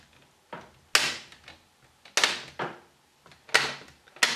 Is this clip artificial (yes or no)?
no